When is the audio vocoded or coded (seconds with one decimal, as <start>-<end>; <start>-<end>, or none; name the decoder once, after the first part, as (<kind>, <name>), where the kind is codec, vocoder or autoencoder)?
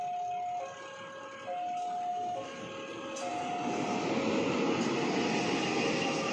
2.1-2.6 (autoencoder, DAC-VAE)